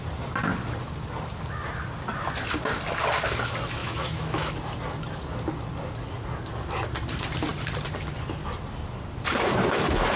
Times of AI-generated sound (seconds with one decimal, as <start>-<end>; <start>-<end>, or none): 3.8-4.5